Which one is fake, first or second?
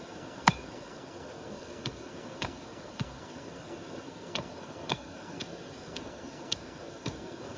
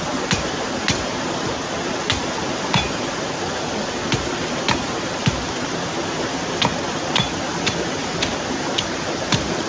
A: first